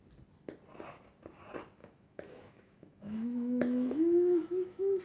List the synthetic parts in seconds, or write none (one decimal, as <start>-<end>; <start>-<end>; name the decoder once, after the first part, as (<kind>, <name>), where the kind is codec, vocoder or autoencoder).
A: 1.8-5.0 (autoencoder, DAC-VAE)